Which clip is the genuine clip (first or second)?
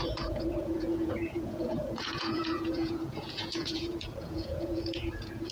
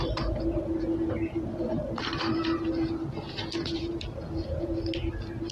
second